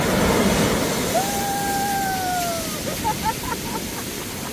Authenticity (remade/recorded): recorded